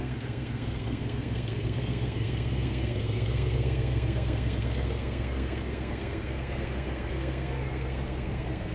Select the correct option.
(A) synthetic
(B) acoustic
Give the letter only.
A